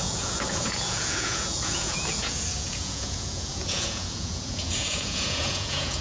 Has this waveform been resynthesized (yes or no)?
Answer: yes